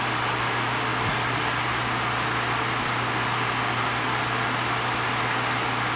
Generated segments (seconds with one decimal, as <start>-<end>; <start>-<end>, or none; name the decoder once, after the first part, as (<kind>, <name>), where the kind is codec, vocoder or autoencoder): 0.9-3.8 (vocoder, BigVGAN v2)